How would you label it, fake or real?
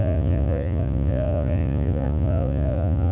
fake